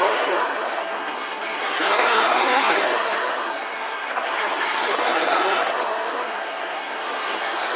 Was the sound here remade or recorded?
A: remade